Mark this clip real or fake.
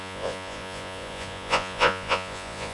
fake